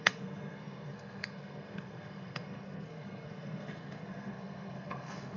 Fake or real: fake